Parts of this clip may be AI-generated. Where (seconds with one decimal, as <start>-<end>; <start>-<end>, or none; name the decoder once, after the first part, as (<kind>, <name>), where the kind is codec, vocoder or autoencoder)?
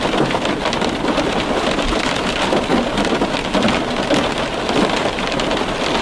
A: 0.0-2.7 (vocoder, BigVGAN v2); 4.5-6.0